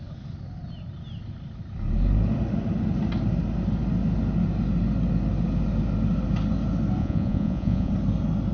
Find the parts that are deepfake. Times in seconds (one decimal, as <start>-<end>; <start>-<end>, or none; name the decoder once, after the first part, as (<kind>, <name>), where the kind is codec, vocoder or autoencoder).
7.0-7.9 (vocoder, Vocos)